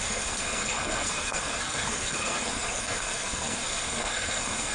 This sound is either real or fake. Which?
fake